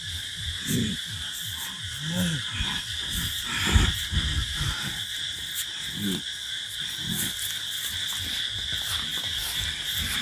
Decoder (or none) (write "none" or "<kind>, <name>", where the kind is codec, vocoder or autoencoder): none